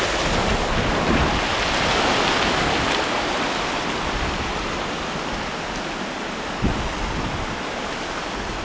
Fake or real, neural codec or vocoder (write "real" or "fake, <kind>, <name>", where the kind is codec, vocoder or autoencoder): real